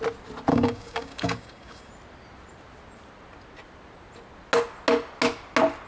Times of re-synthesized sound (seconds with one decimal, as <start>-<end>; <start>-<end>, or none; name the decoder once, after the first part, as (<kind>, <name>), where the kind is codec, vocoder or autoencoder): 0.5-1.9 (codec, DAC)